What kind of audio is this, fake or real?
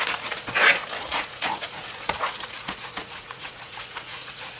fake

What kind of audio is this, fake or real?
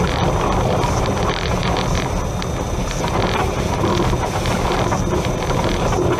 real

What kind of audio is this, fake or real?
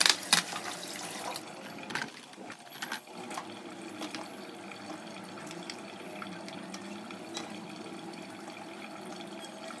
real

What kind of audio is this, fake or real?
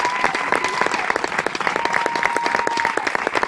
real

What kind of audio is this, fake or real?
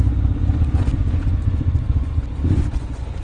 fake